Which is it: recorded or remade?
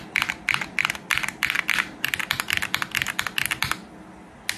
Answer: recorded